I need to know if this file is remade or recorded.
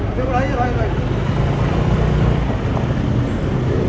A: recorded